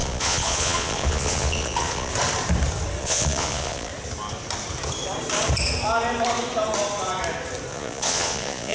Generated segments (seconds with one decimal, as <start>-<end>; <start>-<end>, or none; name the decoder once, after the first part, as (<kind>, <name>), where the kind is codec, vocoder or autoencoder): 0.0-2.1 (vocoder, Vocos); 3.0-3.9; 7.7-8.7